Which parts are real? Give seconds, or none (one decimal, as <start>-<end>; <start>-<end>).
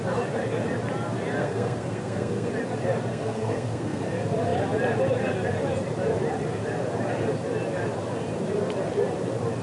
0.0-1.4; 2.5-3.1; 4.0-9.6